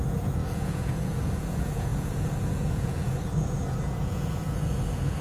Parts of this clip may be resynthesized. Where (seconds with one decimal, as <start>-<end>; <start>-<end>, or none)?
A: 0.0-5.2

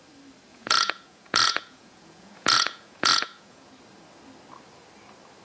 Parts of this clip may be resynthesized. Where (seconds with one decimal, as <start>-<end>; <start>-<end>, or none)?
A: 0.5-3.7

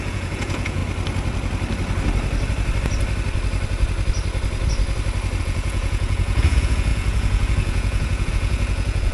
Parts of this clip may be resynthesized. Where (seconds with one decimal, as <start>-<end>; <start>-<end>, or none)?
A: 0.0-0.8; 5.4-9.1

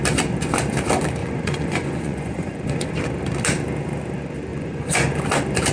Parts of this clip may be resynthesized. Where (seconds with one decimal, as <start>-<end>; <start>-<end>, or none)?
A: 1.2-2.9; 4.5-5.2

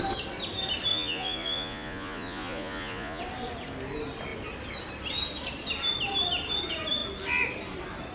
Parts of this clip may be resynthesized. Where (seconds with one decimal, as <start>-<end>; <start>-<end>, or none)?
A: 0.9-3.2

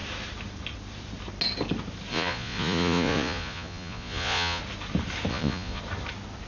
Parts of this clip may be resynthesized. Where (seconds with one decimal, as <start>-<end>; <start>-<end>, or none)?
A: 2.1-4.6; 5.3-5.8